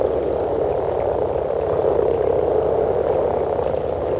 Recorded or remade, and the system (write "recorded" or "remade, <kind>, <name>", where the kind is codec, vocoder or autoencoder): recorded